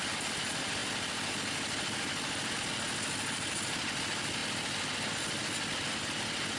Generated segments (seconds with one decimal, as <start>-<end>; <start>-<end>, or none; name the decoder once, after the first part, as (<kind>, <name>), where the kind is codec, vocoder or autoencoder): none